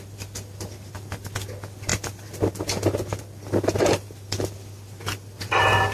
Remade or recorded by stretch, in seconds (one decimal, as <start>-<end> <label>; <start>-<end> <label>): 0.0-5.9 remade